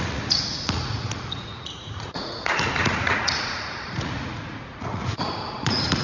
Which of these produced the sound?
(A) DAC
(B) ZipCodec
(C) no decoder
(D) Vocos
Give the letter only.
D